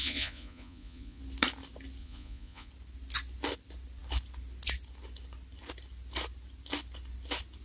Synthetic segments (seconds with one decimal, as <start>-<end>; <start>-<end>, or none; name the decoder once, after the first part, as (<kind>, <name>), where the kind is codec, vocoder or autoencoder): 0.0-1.2 (vocoder, Vocos); 2.0-2.7